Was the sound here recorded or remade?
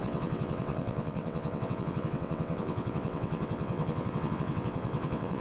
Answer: remade